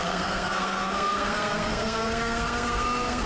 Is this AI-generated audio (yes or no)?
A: yes